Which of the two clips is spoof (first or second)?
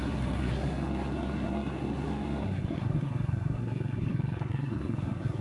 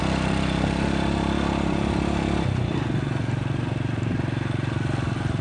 first